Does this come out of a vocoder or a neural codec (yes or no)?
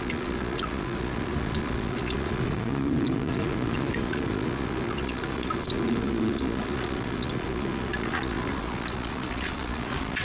yes